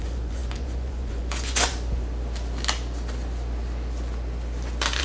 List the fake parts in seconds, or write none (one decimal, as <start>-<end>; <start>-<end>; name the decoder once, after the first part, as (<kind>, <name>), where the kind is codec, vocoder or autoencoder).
0.0-1.7 (vocoder, Vocos)